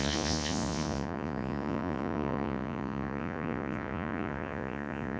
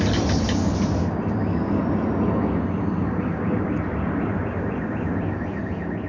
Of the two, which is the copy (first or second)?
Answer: first